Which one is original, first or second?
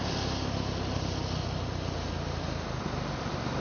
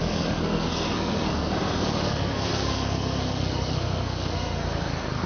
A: first